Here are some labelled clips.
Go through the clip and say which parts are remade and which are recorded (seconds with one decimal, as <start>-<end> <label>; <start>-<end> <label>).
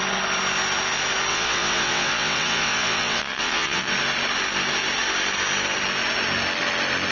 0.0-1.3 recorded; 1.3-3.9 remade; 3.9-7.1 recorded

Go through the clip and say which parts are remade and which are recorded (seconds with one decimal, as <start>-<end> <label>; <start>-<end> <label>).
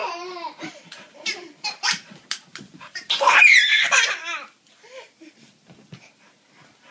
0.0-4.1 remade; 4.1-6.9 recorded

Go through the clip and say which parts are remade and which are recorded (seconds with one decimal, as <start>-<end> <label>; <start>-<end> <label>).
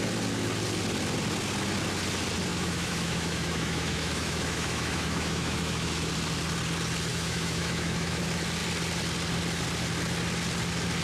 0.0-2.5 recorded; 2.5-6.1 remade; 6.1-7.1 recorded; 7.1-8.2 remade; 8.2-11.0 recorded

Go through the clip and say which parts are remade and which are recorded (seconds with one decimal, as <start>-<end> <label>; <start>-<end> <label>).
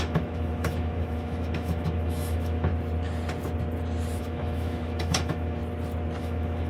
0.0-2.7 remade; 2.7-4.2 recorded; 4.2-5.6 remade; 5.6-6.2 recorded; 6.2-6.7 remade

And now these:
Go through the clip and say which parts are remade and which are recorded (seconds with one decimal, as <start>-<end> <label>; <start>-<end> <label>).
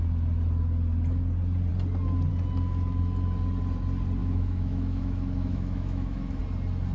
0.0-4.2 recorded; 4.2-6.4 remade; 6.4-6.9 recorded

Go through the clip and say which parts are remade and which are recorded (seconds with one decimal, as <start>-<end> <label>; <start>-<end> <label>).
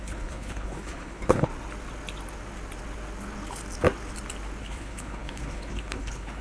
0.0-1.5 remade; 1.5-4.6 recorded; 4.6-6.4 remade